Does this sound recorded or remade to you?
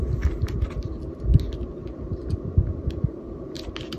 recorded